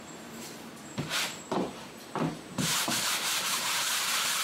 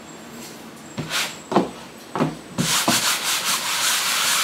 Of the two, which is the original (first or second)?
second